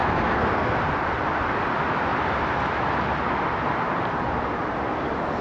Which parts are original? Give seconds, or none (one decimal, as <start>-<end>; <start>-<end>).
0.8-5.4